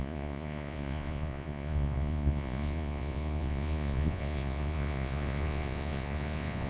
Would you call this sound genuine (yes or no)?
no